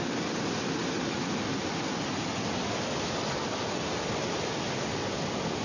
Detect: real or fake real